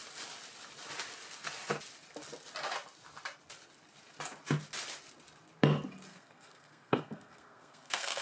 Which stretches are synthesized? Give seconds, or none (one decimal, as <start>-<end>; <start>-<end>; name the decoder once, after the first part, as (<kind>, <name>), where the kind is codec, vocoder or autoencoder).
6.1-8.2 (codec, SNAC)